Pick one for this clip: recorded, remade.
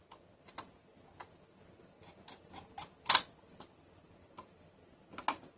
recorded